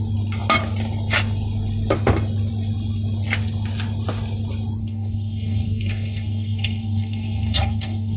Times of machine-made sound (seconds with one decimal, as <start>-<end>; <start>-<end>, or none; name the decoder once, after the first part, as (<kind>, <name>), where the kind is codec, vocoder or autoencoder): 4.8-8.2 (codec, SNAC)